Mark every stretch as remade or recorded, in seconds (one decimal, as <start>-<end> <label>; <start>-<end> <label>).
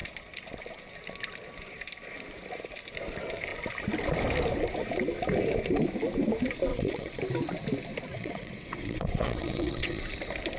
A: 0.0-6.7 recorded; 6.7-7.2 remade; 7.2-8.1 recorded; 8.1-10.0 remade; 10.0-10.6 recorded